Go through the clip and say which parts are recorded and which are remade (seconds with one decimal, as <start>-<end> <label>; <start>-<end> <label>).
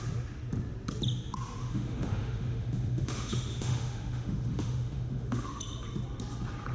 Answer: 0.0-1.6 recorded; 1.6-5.6 remade; 5.6-6.7 recorded